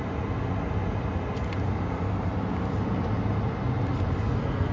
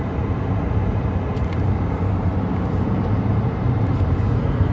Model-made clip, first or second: second